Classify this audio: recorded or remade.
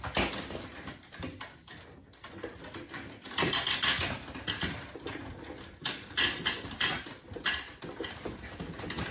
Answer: recorded